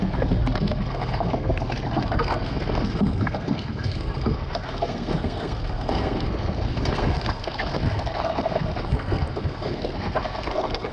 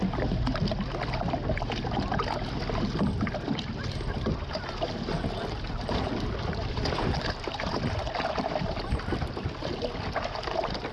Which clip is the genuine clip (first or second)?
second